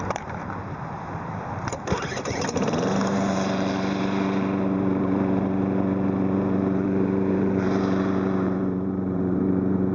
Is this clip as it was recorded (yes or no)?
no